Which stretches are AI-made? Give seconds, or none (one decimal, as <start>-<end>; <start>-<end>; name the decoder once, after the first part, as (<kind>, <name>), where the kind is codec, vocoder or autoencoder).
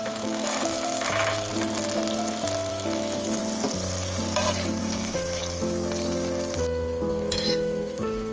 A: 0.0-1.5 (autoencoder, DAC-VAE); 2.7-3.4; 4.8-5.4; 7.1-8.3